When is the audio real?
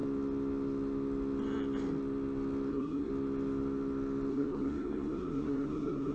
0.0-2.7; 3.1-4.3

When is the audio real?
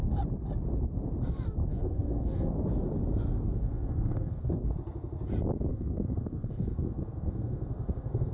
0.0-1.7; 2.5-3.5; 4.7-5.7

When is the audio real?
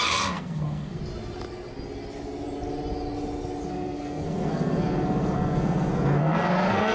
1.0-3.7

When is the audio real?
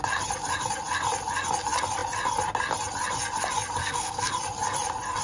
0.0-3.8; 4.3-5.2